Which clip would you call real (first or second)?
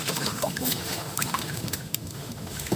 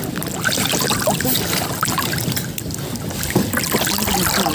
second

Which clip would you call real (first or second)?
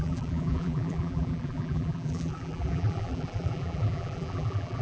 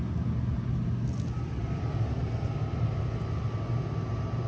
second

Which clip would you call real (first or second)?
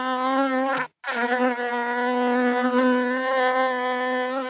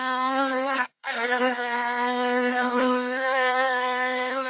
first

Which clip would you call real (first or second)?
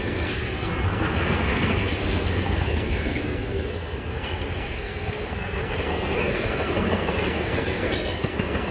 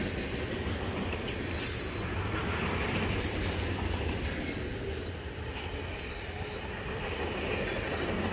second